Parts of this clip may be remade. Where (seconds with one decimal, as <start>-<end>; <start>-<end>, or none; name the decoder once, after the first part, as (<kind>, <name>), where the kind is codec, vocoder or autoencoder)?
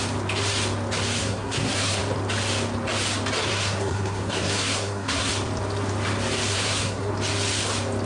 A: 1.2-2.0 (codec, SNAC); 3.5-5.3; 6.5-7.1